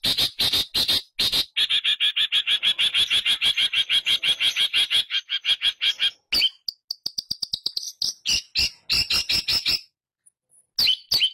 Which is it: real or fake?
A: real